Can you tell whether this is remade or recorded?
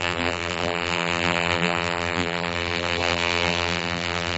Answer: remade